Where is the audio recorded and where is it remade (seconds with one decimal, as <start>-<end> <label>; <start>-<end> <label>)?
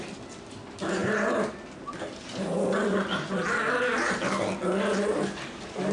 0.0-5.9 recorded